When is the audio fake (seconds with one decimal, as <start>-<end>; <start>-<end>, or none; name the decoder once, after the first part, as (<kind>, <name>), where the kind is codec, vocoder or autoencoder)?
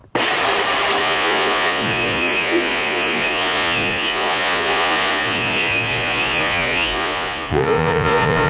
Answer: 1.0-8.5 (vocoder, Vocos)